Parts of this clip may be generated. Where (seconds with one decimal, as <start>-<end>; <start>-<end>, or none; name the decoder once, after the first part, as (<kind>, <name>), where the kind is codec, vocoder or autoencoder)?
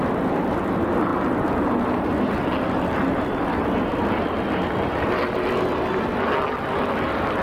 none